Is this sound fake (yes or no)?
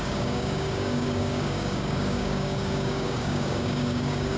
yes